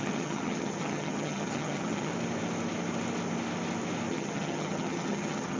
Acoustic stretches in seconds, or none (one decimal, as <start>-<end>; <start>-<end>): 2.1-4.1